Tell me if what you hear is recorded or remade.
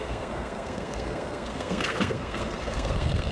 remade